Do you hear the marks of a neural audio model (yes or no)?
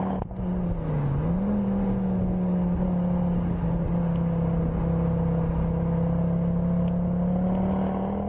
no